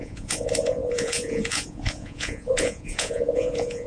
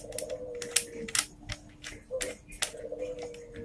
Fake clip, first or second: first